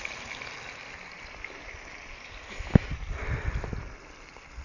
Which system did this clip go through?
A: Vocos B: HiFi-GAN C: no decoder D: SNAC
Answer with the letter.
C